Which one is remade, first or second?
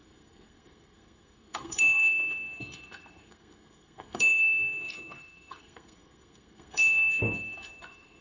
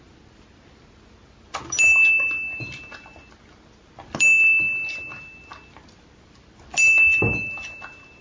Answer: first